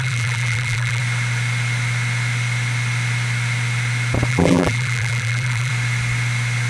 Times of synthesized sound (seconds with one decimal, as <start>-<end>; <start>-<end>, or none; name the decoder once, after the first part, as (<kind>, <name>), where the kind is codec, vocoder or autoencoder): 0.0-1.0 (vocoder, BigVGAN v2); 4.3-5.7